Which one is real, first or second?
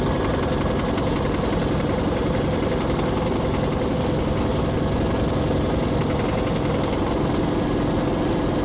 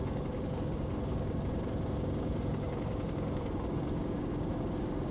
first